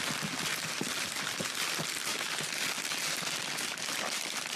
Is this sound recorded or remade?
recorded